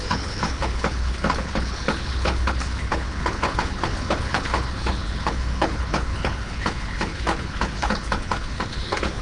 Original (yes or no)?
no